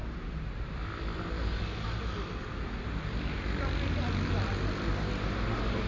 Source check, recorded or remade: recorded